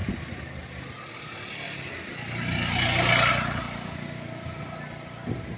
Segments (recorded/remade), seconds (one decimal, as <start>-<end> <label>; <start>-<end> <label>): 0.0-5.6 recorded